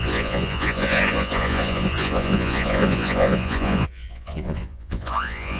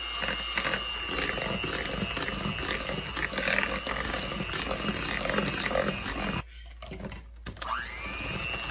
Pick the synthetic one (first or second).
first